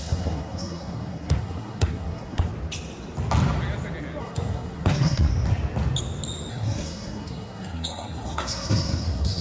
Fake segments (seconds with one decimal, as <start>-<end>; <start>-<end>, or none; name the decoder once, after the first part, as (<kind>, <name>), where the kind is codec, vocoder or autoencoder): 0.0-2.5 (codec, SNAC); 4.2-5.3; 6.5-9.4